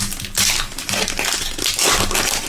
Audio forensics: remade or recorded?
recorded